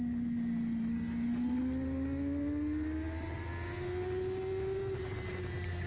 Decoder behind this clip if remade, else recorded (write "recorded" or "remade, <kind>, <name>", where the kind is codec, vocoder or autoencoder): recorded